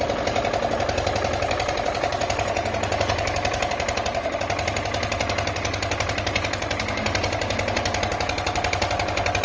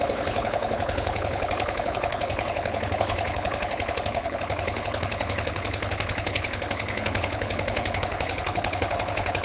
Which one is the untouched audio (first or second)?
first